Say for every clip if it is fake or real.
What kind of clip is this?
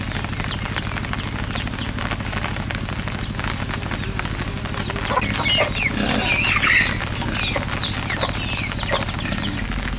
real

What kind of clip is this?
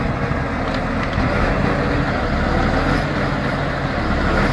real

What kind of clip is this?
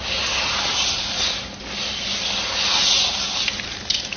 real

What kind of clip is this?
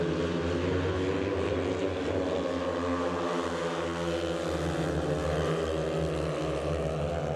real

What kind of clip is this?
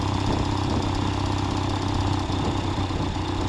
real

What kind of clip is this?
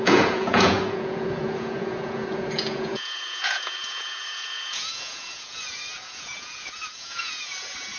fake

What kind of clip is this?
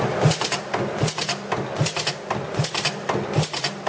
real